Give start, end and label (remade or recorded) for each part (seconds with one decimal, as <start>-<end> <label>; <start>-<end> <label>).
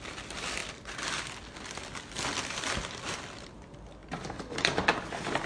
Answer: 0.0-5.5 recorded